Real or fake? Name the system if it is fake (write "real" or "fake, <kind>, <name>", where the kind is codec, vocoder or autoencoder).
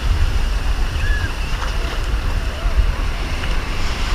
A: fake, vocoder, BigVGAN v2